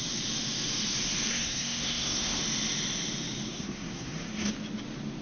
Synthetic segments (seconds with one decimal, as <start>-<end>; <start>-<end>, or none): 1.3-2.4; 3.5-4.5